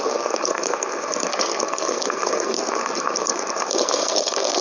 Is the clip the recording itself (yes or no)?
no